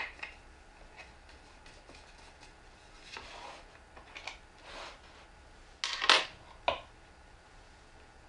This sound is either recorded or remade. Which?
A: recorded